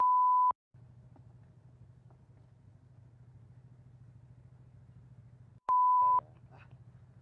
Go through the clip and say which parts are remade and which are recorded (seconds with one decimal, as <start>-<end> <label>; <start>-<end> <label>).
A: 0.0-5.5 recorded; 5.5-6.0 remade; 6.0-7.2 recorded

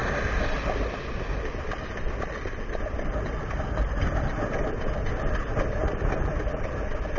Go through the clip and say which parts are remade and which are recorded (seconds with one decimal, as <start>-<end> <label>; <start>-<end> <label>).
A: 0.0-7.2 recorded

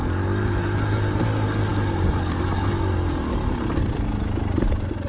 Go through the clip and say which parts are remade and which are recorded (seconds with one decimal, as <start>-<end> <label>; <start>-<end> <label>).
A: 0.0-5.1 recorded

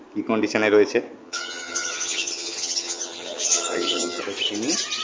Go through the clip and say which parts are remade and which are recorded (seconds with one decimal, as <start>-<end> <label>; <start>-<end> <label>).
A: 0.0-1.2 recorded; 1.2-4.2 remade; 4.2-5.0 recorded